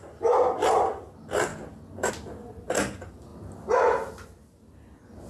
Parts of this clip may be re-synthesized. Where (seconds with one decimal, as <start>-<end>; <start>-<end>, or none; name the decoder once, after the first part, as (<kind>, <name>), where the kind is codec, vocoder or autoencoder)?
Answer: none

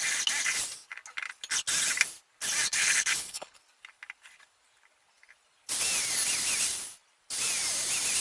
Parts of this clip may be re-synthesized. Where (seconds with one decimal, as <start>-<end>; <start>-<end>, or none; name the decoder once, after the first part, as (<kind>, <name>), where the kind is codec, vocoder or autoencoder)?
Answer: 2.7-3.6 (codec, HILCodec)

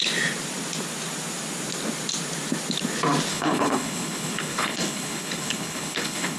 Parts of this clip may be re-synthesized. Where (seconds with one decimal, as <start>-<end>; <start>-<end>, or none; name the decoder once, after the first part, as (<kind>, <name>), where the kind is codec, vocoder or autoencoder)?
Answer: 3.3-6.4 (codec, HILCodec)

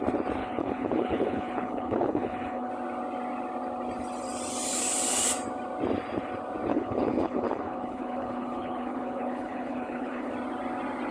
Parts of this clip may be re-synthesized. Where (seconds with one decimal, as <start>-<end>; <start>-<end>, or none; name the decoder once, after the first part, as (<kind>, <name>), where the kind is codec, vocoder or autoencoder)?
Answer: 0.4-2.7 (codec, HILCodec); 6.7-10.3

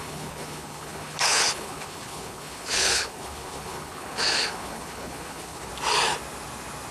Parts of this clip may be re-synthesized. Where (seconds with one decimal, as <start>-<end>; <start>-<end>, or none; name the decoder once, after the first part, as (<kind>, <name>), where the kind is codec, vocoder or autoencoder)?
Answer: 0.0-5.7 (codec, HILCodec)